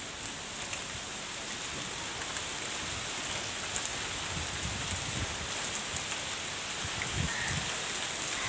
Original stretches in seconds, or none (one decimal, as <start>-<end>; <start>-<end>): 0.0-8.5